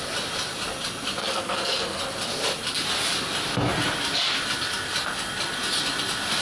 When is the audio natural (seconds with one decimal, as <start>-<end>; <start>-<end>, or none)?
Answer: 0.0-1.2; 2.0-6.4